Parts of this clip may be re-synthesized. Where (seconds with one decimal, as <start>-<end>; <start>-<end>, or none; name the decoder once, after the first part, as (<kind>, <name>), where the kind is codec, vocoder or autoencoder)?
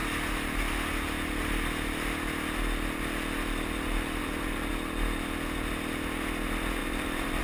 4.2-4.7 (vocoder, BigVGAN v2); 6.8-7.4